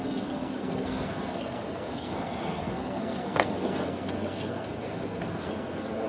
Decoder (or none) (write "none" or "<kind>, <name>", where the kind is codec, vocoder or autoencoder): codec, SNAC